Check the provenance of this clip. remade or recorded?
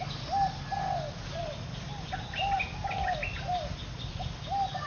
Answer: recorded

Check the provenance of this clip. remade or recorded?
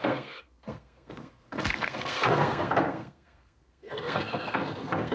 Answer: remade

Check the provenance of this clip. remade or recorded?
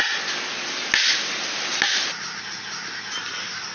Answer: recorded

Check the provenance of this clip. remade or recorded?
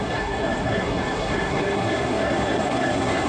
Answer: remade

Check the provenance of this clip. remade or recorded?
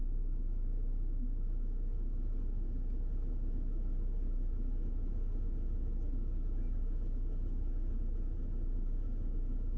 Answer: recorded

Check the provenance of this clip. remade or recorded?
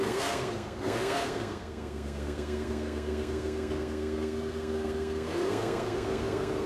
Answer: remade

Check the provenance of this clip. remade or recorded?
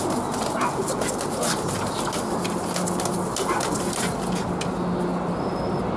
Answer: recorded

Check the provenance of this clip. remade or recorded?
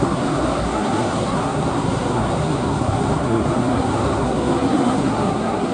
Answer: remade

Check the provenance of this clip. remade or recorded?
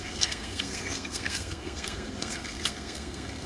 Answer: remade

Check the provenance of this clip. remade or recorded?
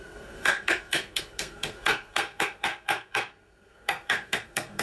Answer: remade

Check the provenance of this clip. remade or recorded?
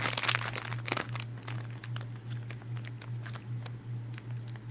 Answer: recorded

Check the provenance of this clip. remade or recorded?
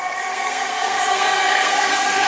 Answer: remade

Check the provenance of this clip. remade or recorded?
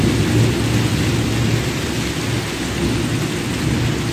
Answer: recorded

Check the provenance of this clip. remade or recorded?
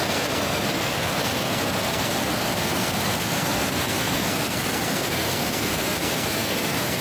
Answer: remade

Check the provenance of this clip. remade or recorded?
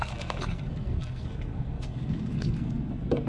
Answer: remade